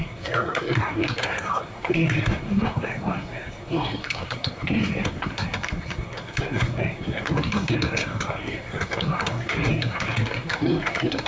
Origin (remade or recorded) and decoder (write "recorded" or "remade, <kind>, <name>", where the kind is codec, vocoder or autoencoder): remade, codec, SNAC